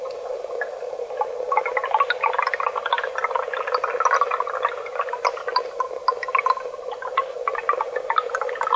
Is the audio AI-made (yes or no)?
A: no